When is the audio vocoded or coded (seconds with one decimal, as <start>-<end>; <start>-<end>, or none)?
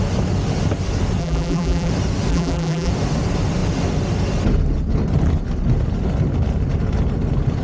1.2-1.9; 2.3-2.9